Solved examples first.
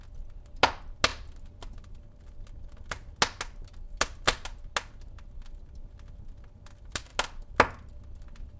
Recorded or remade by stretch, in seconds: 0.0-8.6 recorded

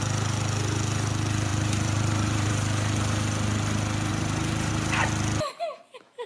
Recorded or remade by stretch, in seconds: 0.0-1.5 recorded; 1.5-2.5 remade; 2.5-4.1 recorded; 4.1-4.7 remade; 4.7-6.3 recorded

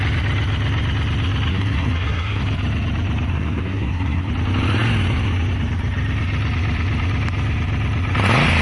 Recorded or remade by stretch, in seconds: 0.0-1.5 recorded; 1.5-2.4 remade; 2.4-3.3 recorded; 3.3-4.3 remade; 4.3-8.6 recorded